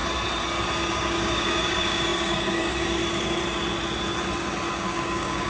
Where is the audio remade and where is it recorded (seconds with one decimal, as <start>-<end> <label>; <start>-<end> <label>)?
0.0-0.9 recorded; 0.9-3.0 remade; 3.0-4.7 recorded; 4.7-5.5 remade